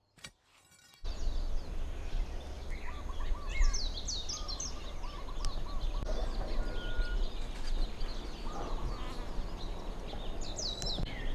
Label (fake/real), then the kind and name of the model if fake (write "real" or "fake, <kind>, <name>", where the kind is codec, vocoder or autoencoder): real